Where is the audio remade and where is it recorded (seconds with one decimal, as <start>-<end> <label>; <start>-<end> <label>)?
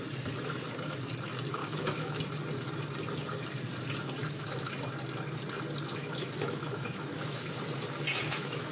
0.0-1.6 recorded; 1.6-2.2 remade; 2.2-4.2 recorded; 4.2-4.7 remade; 4.7-6.0 recorded; 6.0-7.5 remade; 7.5-8.1 recorded; 8.1-8.7 remade